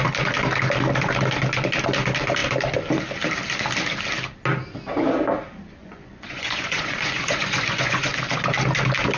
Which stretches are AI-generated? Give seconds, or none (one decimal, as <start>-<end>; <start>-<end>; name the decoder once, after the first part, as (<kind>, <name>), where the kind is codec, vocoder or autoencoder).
5.8-8.1 (vocoder, Vocos)